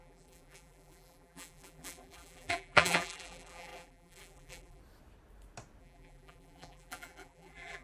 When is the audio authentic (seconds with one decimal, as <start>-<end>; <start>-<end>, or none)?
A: 4.8-5.8